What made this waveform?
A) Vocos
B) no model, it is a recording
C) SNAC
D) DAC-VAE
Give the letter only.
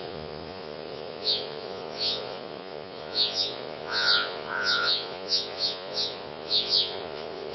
A